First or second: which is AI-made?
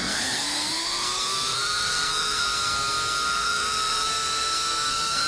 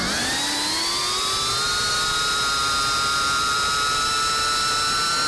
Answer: first